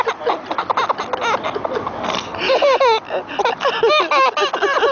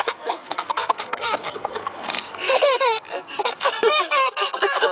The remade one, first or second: second